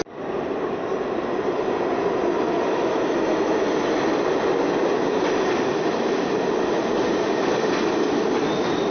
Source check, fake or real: real